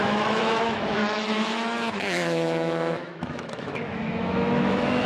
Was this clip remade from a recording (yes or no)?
yes